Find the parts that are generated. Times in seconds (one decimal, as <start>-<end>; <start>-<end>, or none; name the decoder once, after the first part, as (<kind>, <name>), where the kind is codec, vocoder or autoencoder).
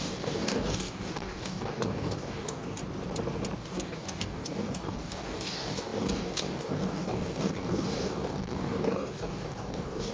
0.0-2.8 (codec, DAC); 3.6-10.1